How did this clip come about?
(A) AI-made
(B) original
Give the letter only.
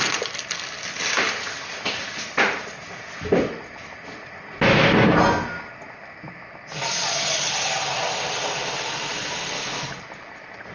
B